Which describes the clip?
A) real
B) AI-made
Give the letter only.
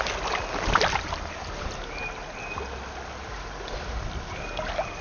A